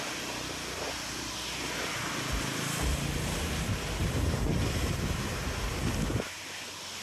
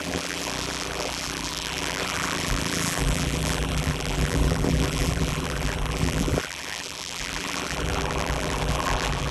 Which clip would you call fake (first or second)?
second